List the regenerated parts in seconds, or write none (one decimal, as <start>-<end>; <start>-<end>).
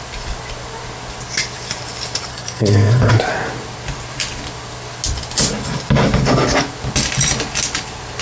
2.3-3.1